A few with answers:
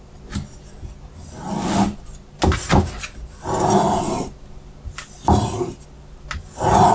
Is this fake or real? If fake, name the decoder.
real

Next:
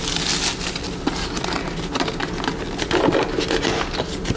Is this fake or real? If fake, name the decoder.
real